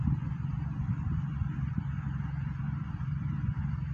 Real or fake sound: fake